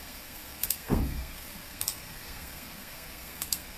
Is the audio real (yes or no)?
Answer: no